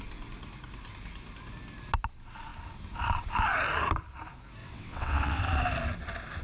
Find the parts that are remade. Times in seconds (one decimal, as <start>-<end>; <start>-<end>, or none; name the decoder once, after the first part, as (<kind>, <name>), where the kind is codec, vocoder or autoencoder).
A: 4.6-5.4 (vocoder, WaveNeXt)